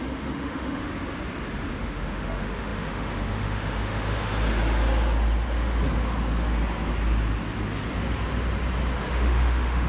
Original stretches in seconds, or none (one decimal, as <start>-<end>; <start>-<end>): 0.9-1.7; 4.3-9.1